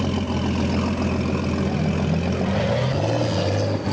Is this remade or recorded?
recorded